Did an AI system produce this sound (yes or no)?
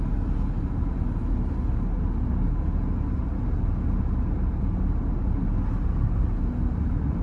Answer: no